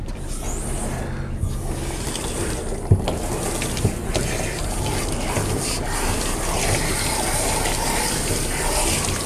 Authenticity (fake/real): real